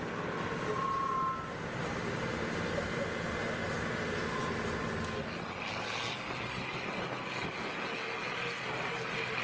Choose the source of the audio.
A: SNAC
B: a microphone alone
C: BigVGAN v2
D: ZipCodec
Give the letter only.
B